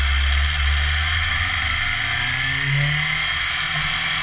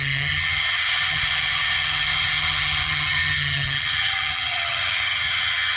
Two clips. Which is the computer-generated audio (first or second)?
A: second